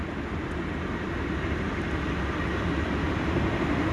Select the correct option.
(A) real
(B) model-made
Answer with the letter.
A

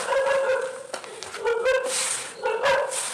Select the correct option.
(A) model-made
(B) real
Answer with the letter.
B